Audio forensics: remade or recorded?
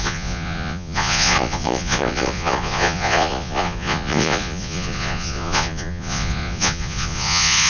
remade